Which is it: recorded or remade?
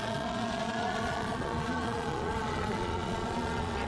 remade